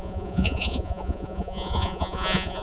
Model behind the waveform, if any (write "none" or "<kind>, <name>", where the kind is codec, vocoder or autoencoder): vocoder, Vocos